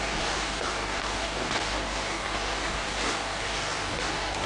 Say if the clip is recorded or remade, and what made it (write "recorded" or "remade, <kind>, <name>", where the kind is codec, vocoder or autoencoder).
remade, codec, DAC